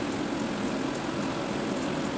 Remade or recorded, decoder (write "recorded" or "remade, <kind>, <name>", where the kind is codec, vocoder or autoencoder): recorded